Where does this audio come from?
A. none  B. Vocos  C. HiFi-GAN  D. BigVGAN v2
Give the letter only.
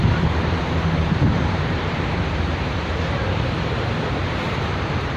D